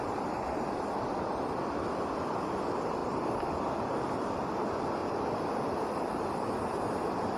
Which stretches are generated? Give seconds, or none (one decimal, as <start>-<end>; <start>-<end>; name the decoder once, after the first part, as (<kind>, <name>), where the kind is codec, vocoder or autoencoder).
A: 3.0-3.7 (vocoder, BigVGAN v2); 5.0-6.6